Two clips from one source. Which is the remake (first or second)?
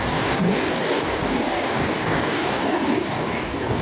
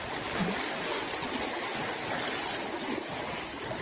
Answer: first